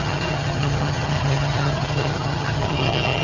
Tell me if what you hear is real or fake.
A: fake